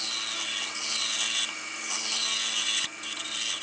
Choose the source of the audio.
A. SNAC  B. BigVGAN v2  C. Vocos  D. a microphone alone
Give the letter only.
D